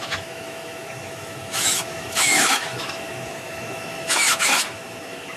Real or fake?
fake